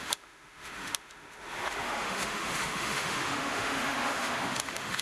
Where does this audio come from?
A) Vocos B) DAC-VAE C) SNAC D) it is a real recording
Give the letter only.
B